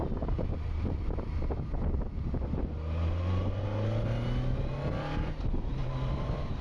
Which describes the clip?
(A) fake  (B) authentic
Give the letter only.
B